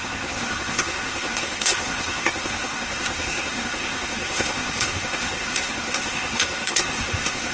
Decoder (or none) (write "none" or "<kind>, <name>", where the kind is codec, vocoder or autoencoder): codec, SNAC